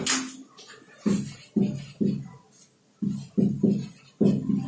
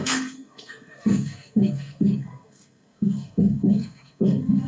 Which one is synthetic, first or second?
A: second